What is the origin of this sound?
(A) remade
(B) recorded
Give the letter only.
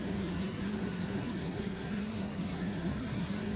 A